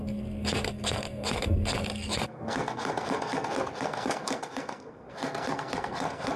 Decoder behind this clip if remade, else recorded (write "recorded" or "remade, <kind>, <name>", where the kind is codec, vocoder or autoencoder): remade, codec, SNAC